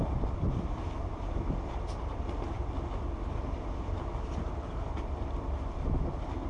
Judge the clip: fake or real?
fake